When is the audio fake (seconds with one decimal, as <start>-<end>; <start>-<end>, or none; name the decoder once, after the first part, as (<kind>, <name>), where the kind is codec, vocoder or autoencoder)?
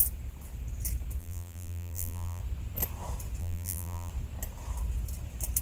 1.2-2.4 (vocoder, BigVGAN v2); 3.4-4.1